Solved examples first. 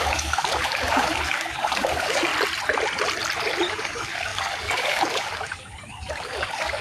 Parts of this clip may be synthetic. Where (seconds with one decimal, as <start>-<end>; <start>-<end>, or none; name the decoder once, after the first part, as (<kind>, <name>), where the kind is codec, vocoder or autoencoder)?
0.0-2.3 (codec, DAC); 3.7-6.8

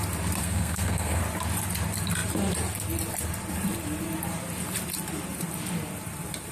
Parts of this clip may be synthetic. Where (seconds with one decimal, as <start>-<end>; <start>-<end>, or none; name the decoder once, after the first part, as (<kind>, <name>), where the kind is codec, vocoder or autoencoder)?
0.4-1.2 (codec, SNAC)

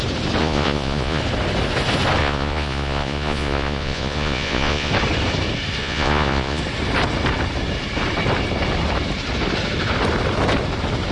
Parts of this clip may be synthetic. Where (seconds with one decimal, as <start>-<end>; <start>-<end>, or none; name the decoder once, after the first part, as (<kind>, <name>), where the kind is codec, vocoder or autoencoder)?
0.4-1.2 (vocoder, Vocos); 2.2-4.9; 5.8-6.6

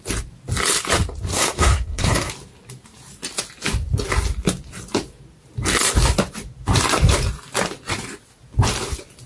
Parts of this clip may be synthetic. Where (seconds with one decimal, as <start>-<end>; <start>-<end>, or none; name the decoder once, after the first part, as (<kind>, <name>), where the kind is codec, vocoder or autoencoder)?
1.3-2.3 (codec, SNAC)

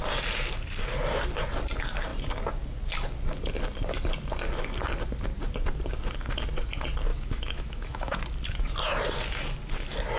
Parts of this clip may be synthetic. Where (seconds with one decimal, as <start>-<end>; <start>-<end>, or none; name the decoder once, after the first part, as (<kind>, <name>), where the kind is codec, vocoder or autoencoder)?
7.1-8.2 (autoencoder, DAC-VAE)

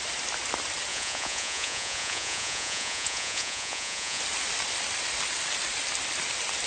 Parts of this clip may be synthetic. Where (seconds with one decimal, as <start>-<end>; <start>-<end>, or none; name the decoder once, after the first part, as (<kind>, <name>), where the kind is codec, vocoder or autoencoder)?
0.9-4.2 (vocoder, Vocos)